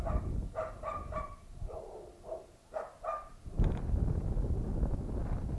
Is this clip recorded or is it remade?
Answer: recorded